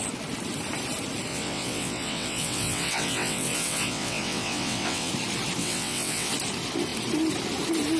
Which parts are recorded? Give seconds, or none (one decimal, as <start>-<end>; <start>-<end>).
0.0-1.3; 5.1-5.6; 6.3-8.0